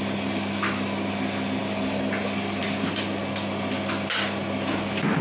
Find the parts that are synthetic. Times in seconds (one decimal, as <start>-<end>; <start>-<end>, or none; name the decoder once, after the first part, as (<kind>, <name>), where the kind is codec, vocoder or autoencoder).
none